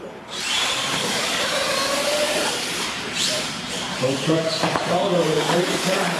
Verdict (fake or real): fake